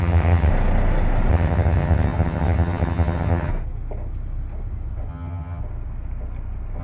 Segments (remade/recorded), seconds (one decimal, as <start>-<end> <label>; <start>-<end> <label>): 0.0-0.5 remade; 0.5-1.3 recorded; 1.3-3.5 remade; 3.5-5.1 recorded; 5.1-5.6 remade; 5.6-6.8 recorded